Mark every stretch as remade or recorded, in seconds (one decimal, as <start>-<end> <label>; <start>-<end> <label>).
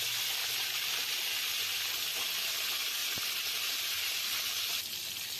0.0-0.4 recorded; 0.4-0.9 remade; 0.9-5.4 recorded